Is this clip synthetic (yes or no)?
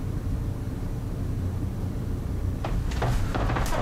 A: no